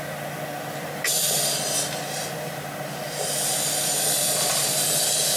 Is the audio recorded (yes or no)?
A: yes